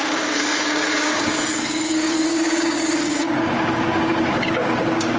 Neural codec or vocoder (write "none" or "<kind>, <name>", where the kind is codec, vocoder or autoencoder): codec, DAC